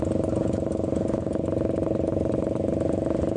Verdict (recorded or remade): recorded